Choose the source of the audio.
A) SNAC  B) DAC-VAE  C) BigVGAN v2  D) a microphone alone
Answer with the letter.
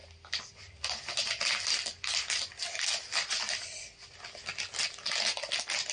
D